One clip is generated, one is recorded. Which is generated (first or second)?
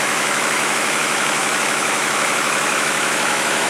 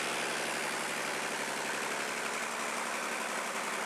first